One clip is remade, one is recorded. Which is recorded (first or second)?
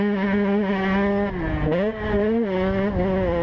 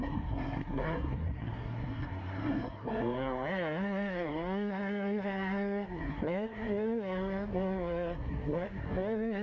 first